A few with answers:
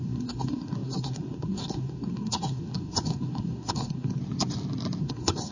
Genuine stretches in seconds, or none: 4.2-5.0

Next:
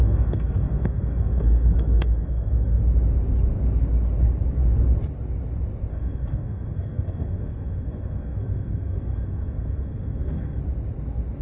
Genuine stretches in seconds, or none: 2.8-5.9; 10.6-11.4

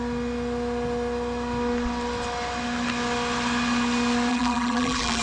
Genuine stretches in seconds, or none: 0.0-4.3

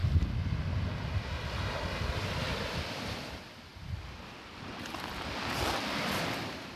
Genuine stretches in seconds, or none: 0.0-6.8

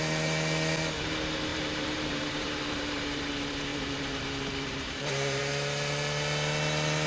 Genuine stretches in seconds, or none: 0.0-1.5; 3.3-3.7; 5.4-7.1